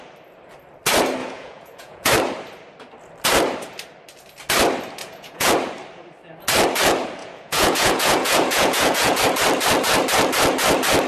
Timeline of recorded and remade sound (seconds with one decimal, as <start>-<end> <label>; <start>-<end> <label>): 0.0-1.2 recorded; 1.2-2.1 remade; 2.1-5.0 recorded; 5.0-5.5 remade; 5.5-7.2 recorded; 7.2-9.2 remade; 9.2-11.1 recorded